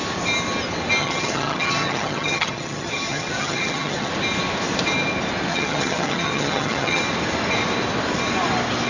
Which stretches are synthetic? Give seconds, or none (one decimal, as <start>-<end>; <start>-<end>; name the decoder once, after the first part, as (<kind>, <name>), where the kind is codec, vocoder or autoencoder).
1.0-4.1 (vocoder, HiFi-GAN); 5.5-7.0